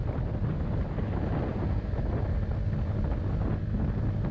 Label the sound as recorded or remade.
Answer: recorded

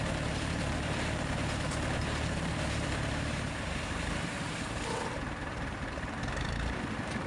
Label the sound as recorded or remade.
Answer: remade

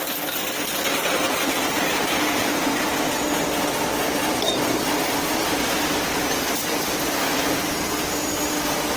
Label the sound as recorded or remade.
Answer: recorded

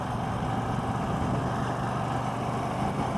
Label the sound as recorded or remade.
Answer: recorded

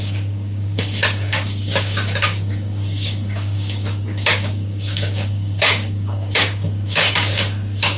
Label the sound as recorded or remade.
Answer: remade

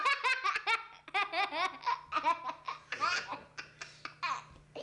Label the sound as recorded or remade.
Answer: recorded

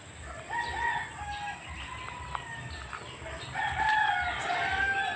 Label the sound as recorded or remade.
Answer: recorded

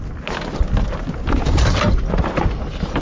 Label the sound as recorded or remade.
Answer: recorded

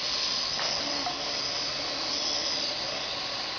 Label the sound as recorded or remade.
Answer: recorded